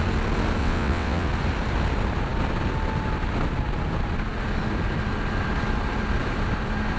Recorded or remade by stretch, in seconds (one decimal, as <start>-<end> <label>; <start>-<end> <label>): 0.0-0.6 recorded; 0.6-1.3 remade; 1.3-7.0 recorded